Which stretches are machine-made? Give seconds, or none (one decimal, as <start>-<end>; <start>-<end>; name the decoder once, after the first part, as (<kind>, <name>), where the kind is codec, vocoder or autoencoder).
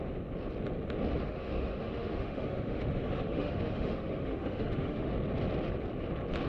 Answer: 1.2-5.1 (autoencoder, DAC-VAE)